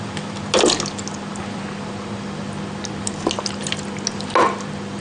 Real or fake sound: real